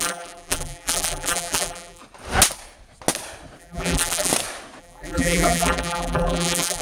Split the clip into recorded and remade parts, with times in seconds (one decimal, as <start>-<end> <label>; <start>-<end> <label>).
0.0-2.0 remade; 2.0-3.6 recorded; 3.6-4.3 remade; 4.3-4.8 recorded; 4.8-6.8 remade